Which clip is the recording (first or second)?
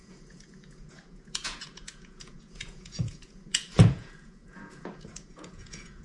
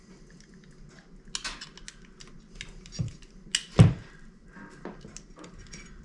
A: second